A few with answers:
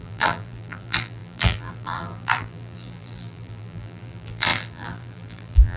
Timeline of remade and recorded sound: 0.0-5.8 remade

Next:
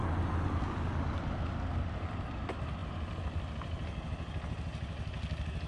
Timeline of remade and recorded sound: 0.0-5.7 recorded

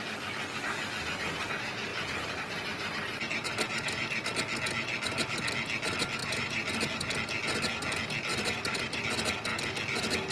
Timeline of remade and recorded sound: 0.0-1.9 recorded; 1.9-4.3 remade; 4.3-6.2 recorded; 6.2-6.7 remade; 6.7-8.3 recorded; 8.3-9.0 remade; 9.0-10.3 recorded

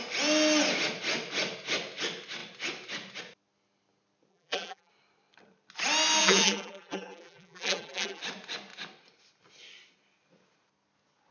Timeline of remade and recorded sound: 0.0-4.3 recorded; 4.3-4.9 remade; 4.9-6.2 recorded; 6.2-8.2 remade; 8.2-11.3 recorded

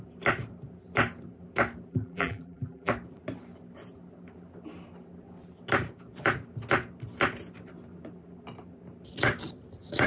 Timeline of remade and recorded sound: 0.0-1.9 recorded; 1.9-2.9 remade; 2.9-10.1 recorded